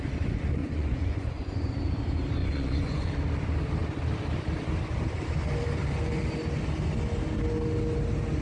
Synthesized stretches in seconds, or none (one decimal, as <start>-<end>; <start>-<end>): 0.6-1.7; 2.4-3.1